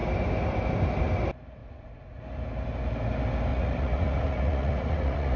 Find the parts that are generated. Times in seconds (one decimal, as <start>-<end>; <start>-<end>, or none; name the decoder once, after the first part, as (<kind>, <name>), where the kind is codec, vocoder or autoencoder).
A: 1.6-2.2 (vocoder, Vocos); 3.5-5.4

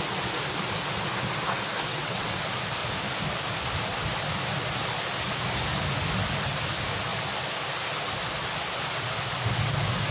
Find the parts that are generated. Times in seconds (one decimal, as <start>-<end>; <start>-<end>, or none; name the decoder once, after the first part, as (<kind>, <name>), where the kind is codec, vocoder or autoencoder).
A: 1.9-2.4 (vocoder, WaveNeXt)

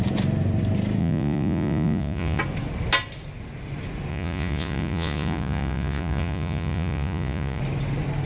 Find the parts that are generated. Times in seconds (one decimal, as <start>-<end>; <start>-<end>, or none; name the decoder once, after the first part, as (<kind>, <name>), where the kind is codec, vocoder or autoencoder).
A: 1.0-2.4 (vocoder, Vocos); 4.1-7.6

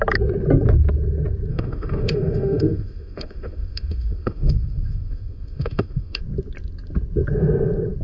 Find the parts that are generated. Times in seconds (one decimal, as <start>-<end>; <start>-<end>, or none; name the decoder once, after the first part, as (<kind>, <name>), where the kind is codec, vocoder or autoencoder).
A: 1.5-6.2 (autoencoder, DAC-VAE)

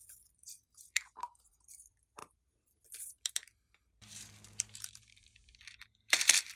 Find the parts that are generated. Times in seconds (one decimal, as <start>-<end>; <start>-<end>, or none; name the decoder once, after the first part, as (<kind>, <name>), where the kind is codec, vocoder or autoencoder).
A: 0.0-6.6 (vocoder, BigVGAN v2)

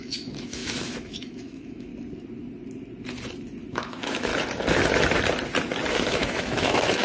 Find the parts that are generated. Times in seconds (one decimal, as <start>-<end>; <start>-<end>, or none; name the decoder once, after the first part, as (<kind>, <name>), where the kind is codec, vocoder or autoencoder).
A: 0.0-1.9 (autoencoder, DAC-VAE); 3.7-4.3; 5.9-7.0

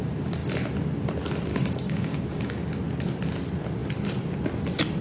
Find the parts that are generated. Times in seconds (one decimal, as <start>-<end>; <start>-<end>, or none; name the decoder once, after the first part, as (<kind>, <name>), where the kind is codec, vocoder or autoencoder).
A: 1.5-2.7 (codec, DAC)

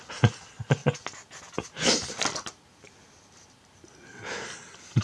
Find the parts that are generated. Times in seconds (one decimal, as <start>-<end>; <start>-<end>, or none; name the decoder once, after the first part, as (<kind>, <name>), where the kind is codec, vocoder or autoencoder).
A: none